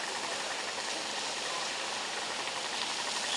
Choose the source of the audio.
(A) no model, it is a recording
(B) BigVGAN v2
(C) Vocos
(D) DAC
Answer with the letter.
A